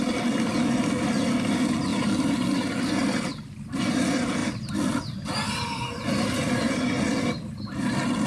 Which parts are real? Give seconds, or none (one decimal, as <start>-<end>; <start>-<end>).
0.0-8.3